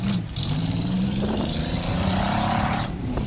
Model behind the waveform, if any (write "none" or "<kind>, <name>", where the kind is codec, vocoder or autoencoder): vocoder, BigVGAN v2